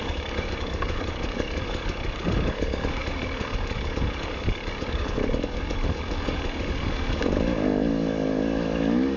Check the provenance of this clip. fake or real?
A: fake